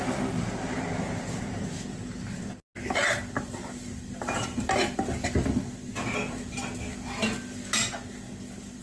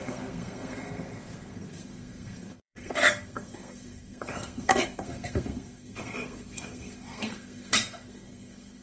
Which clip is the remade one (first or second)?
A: second